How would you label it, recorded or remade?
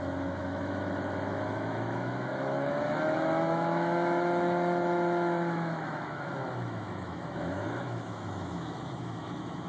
remade